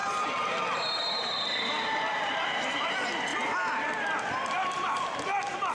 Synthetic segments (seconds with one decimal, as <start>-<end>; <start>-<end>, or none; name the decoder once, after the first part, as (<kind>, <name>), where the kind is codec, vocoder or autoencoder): 0.0-2.9 (vocoder, BigVGAN v2)